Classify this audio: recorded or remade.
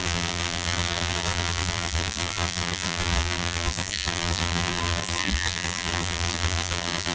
remade